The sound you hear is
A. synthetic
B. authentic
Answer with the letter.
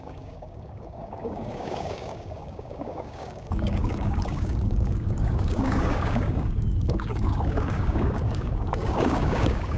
A